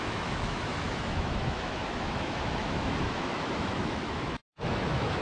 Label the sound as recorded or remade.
remade